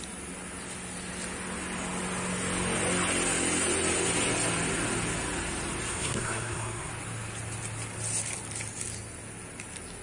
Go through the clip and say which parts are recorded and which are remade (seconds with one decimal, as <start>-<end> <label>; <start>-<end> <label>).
0.0-5.9 recorded; 5.9-6.9 remade; 6.9-10.0 recorded